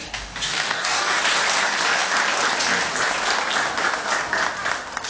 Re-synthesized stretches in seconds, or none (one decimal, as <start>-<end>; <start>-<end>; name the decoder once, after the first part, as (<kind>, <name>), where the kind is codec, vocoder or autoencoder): 0.0-1.2 (codec, DAC)